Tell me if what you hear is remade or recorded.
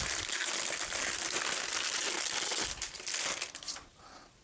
recorded